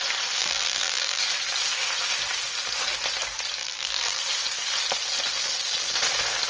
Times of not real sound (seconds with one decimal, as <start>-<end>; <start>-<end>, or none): 0.4-1.2; 3.6-4.2